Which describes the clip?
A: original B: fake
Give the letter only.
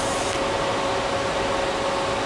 A